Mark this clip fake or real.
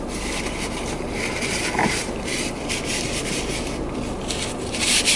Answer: fake